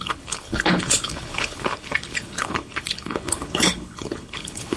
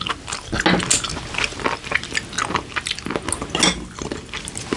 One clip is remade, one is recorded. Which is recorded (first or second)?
second